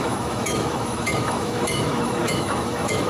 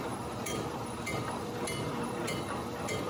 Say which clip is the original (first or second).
second